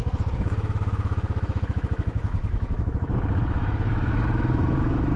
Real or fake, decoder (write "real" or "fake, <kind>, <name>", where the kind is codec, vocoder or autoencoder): fake, autoencoder, DAC-VAE